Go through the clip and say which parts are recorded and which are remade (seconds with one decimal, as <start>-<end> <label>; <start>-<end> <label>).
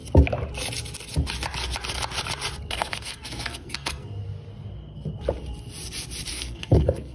0.0-2.7 recorded; 2.7-4.2 remade; 4.2-6.3 recorded; 6.3-7.1 remade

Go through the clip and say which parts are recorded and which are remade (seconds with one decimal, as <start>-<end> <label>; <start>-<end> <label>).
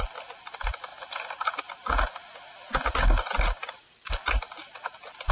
0.0-5.3 recorded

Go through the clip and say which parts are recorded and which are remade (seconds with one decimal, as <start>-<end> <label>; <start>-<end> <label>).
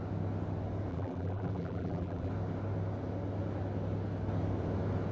0.0-0.9 recorded; 0.9-2.3 remade; 2.3-5.1 recorded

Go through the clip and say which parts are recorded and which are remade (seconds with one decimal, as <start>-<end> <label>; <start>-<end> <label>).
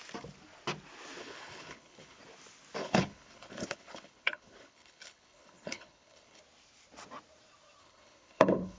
0.0-1.2 recorded; 1.2-2.2 remade; 2.2-2.8 recorded; 2.8-6.4 remade; 6.4-7.8 recorded; 7.8-8.8 remade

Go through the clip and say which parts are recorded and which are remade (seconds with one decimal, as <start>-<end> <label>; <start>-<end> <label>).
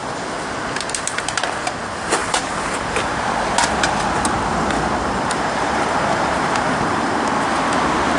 0.0-2.2 recorded; 2.2-3.0 remade; 3.0-4.5 recorded; 4.5-7.2 remade; 7.2-8.2 recorded